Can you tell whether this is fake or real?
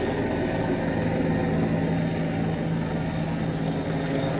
real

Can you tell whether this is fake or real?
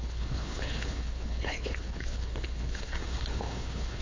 fake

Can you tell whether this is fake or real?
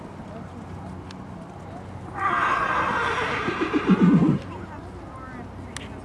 real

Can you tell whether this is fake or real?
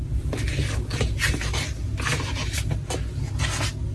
real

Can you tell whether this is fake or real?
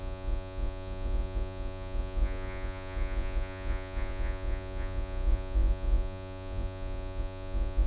fake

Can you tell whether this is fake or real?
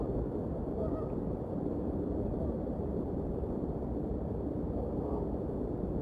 real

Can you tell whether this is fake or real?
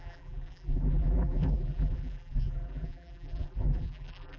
fake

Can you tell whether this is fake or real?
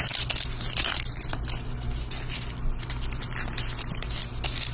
real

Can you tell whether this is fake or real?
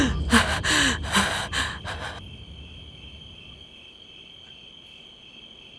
real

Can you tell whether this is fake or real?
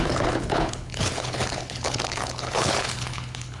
fake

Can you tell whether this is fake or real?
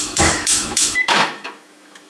fake